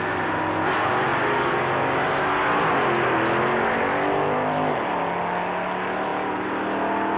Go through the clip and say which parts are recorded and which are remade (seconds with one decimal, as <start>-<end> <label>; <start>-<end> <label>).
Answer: 0.0-7.2 recorded